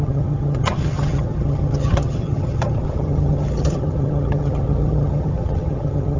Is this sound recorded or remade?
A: remade